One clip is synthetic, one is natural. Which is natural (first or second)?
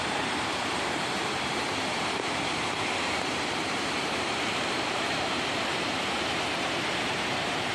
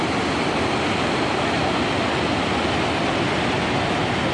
second